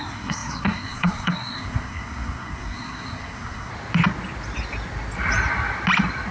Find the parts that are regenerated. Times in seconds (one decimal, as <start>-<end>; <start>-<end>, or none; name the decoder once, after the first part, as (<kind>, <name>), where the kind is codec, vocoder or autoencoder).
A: 0.0-3.7 (codec, SNAC)